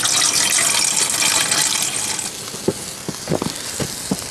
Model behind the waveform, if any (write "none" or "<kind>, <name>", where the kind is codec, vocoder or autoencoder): none